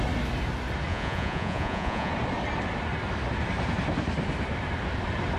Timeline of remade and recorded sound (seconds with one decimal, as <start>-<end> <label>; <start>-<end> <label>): 0.0-0.9 recorded; 0.9-2.1 remade; 2.1-5.4 recorded